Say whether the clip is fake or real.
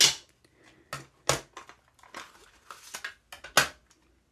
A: real